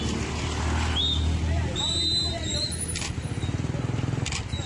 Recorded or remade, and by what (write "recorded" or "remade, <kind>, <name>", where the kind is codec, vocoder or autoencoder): recorded